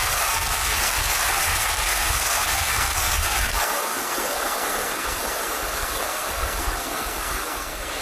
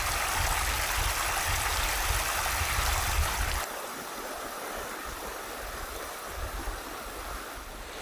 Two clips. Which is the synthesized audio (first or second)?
first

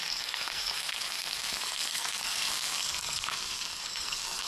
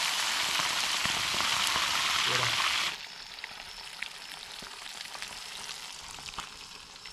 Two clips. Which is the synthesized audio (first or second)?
first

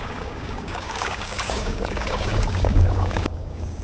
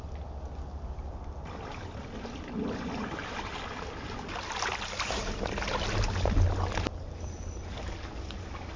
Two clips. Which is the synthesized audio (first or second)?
first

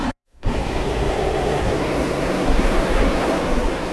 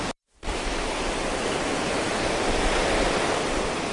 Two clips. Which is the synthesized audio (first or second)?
first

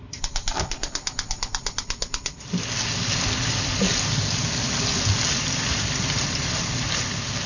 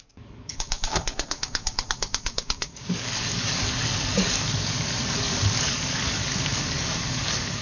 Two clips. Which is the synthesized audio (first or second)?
second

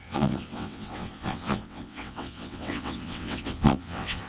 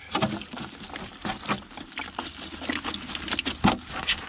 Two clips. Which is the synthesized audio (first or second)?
first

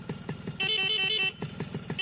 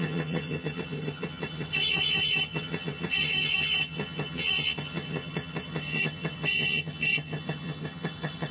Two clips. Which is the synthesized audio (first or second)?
second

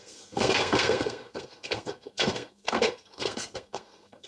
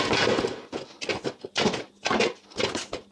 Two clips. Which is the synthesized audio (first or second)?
first